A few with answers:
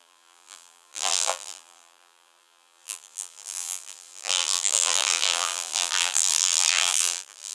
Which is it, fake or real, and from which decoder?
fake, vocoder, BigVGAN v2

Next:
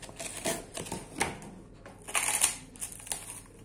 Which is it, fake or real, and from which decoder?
real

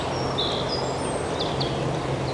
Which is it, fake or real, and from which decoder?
real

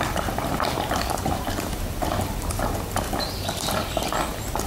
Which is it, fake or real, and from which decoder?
real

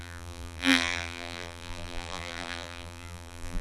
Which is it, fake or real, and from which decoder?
fake, vocoder, BigVGAN v2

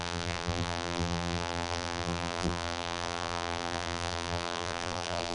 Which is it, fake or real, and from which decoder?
fake, vocoder, BigVGAN v2